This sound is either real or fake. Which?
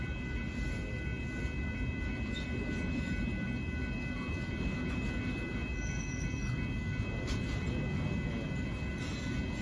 real